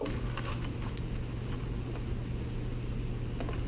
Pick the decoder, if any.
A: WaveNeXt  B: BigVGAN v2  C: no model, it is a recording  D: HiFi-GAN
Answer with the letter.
C